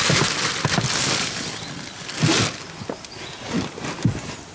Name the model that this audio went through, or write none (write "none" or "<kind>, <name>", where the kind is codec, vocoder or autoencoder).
none